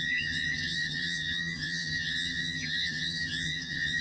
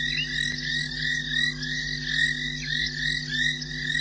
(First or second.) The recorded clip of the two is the second